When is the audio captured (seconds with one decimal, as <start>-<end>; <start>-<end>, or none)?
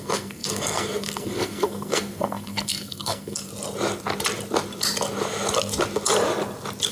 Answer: 3.5-6.9